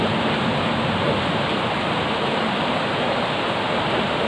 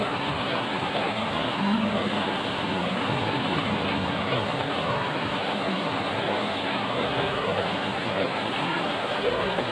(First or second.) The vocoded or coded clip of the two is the second